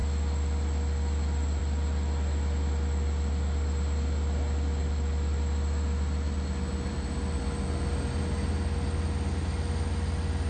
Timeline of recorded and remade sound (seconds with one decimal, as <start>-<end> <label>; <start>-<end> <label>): 0.0-10.5 recorded